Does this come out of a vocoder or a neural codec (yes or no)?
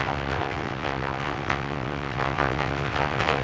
yes